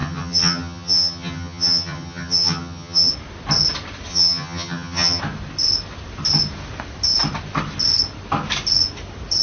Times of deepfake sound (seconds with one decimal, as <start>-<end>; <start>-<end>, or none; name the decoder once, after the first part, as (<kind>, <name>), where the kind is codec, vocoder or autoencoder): 0.0-3.1 (vocoder, HiFi-GAN); 4.1-5.2